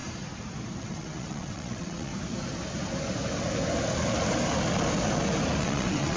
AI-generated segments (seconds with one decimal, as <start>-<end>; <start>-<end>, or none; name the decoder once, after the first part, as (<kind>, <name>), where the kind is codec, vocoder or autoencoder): 0.8-2.1 (vocoder, WaveNeXt); 5.6-6.2